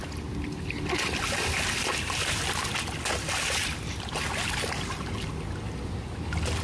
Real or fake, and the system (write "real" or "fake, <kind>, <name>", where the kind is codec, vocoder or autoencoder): real